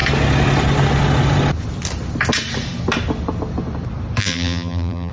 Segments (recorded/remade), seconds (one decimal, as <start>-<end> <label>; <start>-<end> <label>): 0.0-4.2 recorded; 4.2-5.1 remade